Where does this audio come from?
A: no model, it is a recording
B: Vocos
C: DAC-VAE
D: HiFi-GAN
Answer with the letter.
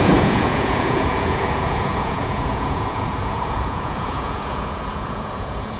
B